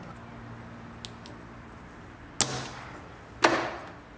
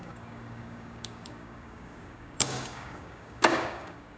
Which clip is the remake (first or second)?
second